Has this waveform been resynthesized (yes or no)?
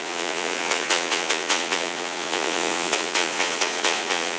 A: yes